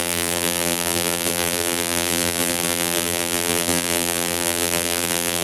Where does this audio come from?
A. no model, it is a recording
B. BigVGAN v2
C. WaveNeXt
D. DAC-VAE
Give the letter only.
B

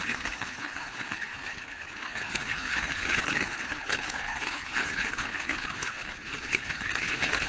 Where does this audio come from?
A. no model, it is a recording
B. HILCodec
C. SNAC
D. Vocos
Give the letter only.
B